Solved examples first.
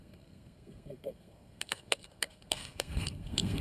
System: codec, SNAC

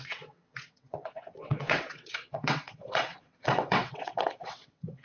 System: vocoder, WaveNeXt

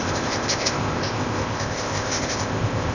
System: codec, ZipCodec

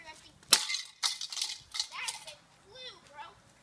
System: none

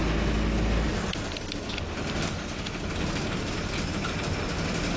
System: none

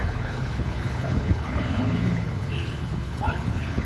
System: codec, HILCodec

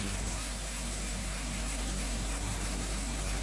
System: codec, SNAC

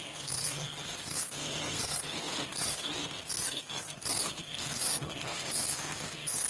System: codec, SNAC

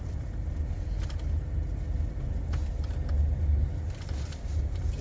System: none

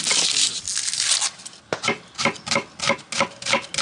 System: none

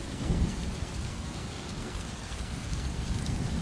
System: codec, SNAC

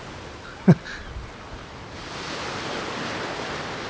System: none